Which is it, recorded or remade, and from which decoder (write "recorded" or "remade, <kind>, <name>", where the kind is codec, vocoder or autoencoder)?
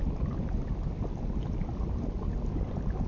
recorded